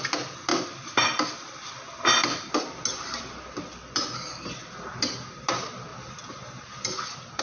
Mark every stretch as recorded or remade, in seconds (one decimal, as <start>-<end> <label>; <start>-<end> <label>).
0.0-7.4 recorded